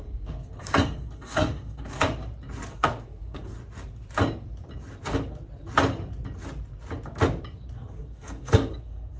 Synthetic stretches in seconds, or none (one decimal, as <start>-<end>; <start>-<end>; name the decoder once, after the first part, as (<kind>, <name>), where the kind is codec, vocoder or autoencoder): 0.0-2.0 (codec, SNAC); 2.7-3.6; 8.0-9.2